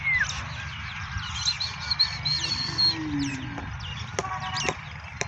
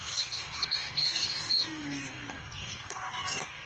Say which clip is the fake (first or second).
second